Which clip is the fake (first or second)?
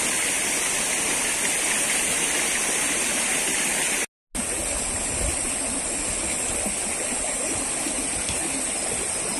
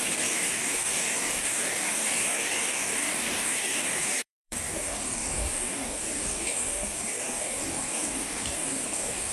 second